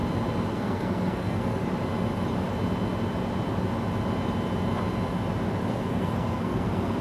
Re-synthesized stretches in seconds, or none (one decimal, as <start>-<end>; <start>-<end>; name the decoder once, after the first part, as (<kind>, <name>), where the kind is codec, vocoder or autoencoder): 0.5-1.6 (codec, SNAC); 5.7-7.0